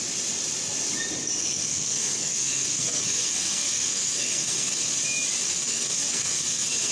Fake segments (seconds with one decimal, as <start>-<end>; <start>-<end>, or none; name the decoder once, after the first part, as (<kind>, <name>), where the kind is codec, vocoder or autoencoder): 1.4-4.8 (codec, SNAC); 5.4-6.9